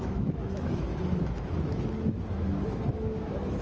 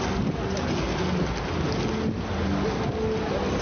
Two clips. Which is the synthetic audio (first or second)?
first